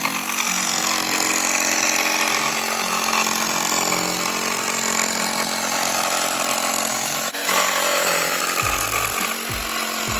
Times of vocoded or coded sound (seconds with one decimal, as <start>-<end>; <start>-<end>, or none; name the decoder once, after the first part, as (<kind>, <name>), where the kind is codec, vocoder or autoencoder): 6.9-8.4 (autoencoder, DAC-VAE)